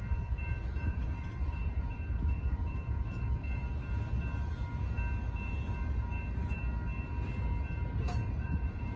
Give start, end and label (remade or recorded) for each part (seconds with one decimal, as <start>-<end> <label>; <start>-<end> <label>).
0.0-3.6 remade; 3.6-8.0 recorded; 8.0-9.0 remade